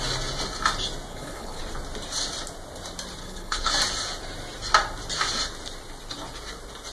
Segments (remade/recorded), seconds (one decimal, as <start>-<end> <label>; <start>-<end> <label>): 0.0-1.1 recorded; 1.1-1.6 remade; 1.6-3.2 recorded; 3.2-3.7 remade; 3.7-6.9 recorded